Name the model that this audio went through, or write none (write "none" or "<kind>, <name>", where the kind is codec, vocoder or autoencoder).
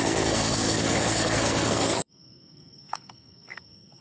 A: codec, SNAC